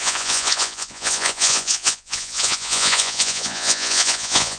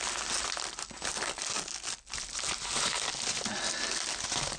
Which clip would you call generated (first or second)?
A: first